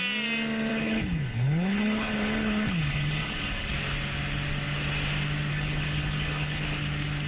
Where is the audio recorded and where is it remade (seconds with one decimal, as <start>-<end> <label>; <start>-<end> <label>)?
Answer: 0.0-0.7 recorded; 0.7-3.7 remade; 3.7-5.5 recorded; 5.5-6.6 remade; 6.6-7.3 recorded